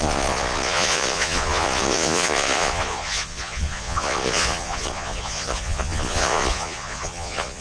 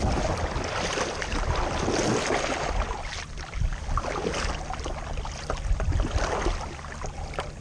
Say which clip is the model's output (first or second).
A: first